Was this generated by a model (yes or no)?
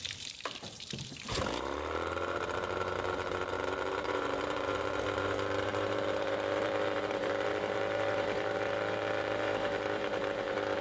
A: yes